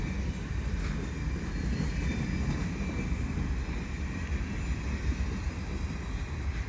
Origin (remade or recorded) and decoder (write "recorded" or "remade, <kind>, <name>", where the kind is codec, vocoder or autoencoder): recorded